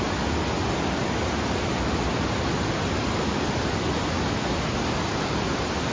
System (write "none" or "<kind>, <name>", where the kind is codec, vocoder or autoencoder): none